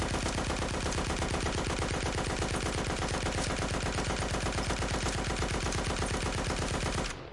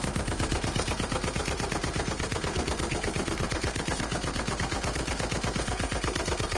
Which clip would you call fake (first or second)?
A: second